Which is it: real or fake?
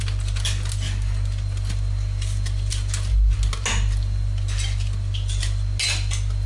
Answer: real